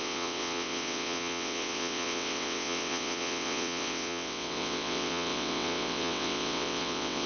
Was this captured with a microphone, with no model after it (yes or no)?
no